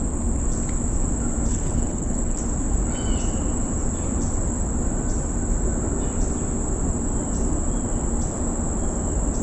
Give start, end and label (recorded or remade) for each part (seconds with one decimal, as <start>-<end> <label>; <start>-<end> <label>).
0.0-1.5 recorded; 1.5-2.4 remade; 2.4-9.4 recorded